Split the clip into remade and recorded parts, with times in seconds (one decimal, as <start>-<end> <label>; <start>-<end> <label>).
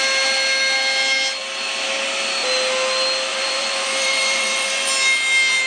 0.0-3.3 recorded; 3.3-4.9 remade; 4.9-5.7 recorded